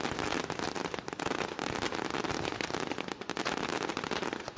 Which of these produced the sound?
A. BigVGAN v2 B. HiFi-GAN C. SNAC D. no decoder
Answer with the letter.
D